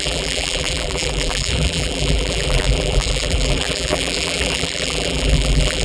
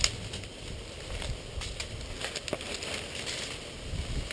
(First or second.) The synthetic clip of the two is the first